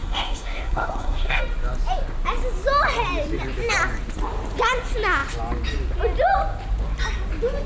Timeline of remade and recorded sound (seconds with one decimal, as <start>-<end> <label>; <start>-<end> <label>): 0.0-1.4 remade; 1.4-7.7 recorded